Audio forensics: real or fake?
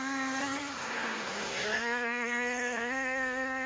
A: fake